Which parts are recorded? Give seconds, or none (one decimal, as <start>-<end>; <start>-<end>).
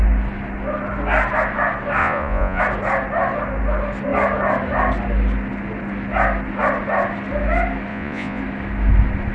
0.0-2.0; 2.6-7.9; 8.4-9.3